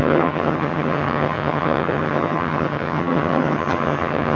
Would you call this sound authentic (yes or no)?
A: no